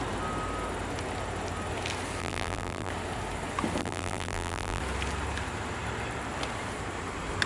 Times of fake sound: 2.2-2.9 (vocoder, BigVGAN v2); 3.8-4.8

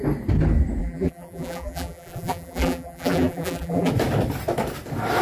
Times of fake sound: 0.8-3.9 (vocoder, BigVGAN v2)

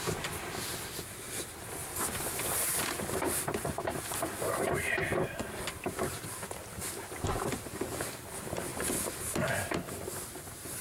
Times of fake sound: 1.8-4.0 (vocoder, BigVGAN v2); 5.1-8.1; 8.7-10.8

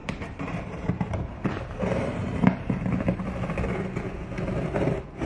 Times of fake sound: 0.0-3.2 (vocoder, BigVGAN v2)

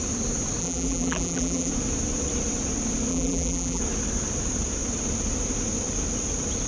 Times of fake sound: 0.6-1.7 (vocoder, BigVGAN v2); 3.1-3.8